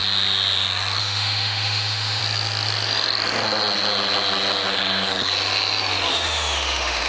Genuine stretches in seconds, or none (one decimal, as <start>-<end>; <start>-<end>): 0.0-1.0; 2.2-6.1

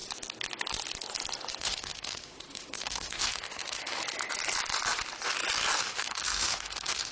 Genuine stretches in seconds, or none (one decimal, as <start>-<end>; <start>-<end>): 0.0-1.6; 4.0-5.8

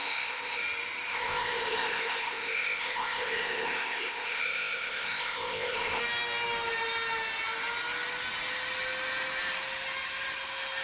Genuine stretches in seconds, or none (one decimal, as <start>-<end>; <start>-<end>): 0.6-1.1; 6.0-10.8

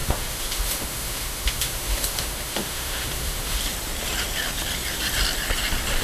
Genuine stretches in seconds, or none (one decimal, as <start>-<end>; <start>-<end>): 3.6-6.0

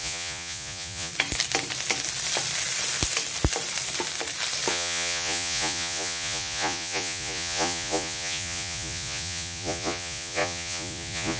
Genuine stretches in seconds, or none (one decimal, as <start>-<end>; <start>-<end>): 1.1-4.7

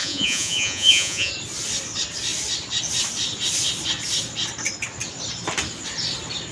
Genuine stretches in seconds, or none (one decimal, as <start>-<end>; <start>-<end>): 1.3-6.5